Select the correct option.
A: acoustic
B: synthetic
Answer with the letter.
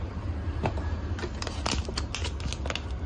A